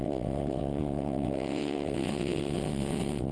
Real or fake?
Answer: fake